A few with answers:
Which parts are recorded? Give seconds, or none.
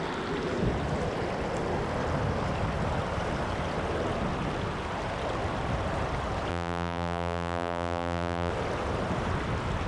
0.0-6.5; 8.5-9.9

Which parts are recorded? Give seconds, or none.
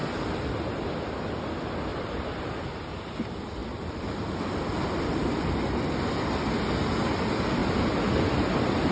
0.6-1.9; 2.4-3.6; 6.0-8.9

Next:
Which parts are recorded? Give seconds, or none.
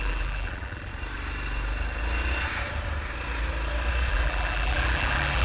0.9-4.1